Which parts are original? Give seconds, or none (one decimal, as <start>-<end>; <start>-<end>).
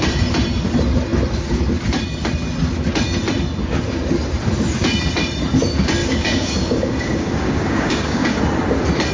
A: 0.0-6.0; 8.4-9.1